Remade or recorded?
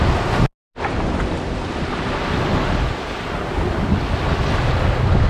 recorded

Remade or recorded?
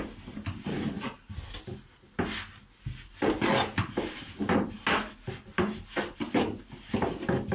recorded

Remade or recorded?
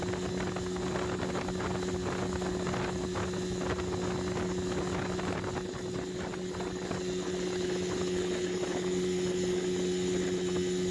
recorded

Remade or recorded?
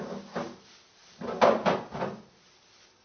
recorded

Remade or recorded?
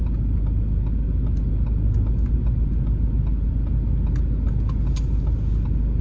recorded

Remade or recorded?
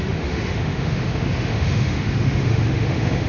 remade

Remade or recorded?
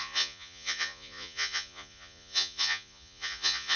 remade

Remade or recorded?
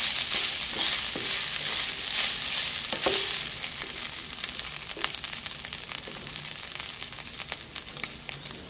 recorded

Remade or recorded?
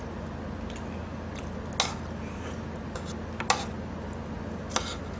recorded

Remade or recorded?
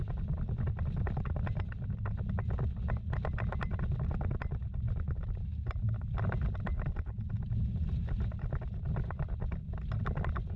recorded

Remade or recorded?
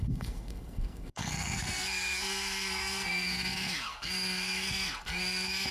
remade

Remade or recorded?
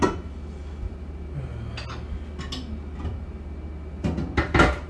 recorded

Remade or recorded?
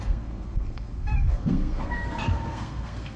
remade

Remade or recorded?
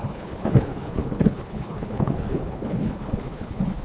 remade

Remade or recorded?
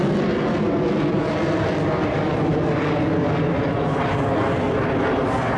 recorded